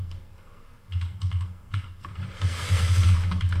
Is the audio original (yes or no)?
no